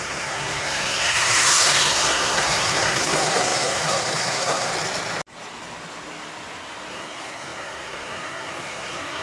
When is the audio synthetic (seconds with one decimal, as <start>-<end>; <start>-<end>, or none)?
0.0-4.7; 6.9-9.2